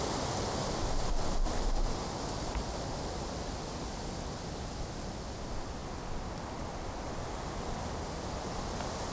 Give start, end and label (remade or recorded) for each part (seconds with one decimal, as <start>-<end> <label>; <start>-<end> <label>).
0.0-9.1 recorded